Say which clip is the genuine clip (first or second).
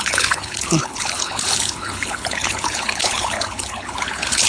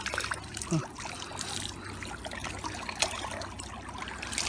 second